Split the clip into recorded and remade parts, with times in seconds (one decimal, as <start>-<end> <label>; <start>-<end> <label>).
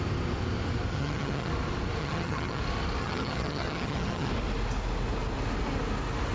0.0-0.9 recorded; 0.9-1.5 remade; 1.5-2.0 recorded; 2.0-2.6 remade; 2.6-3.0 recorded; 3.0-4.3 remade; 4.3-6.3 recorded